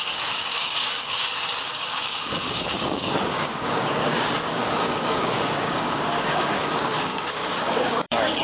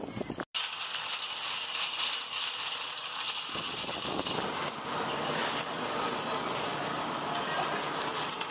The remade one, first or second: first